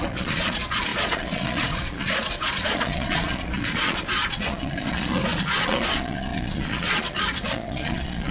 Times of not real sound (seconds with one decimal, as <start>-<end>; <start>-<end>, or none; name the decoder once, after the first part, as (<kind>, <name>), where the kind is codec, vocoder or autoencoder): 0.0-8.3 (vocoder, Vocos)